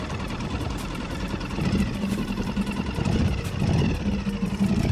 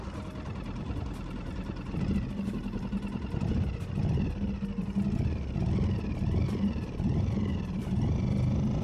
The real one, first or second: second